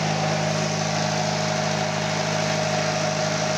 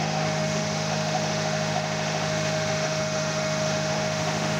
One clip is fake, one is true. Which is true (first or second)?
first